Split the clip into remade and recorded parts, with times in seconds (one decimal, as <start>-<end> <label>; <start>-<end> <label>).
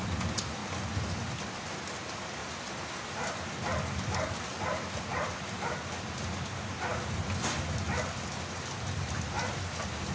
0.0-10.1 recorded